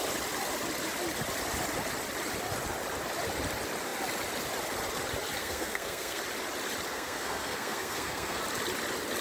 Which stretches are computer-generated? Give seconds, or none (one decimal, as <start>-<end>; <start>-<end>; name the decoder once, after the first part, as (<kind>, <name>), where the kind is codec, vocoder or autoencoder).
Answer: 5.4-6.2 (codec, SNAC); 6.9-8.4